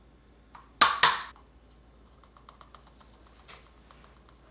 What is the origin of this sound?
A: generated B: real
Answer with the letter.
B